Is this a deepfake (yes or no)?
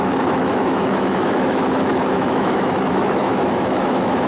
yes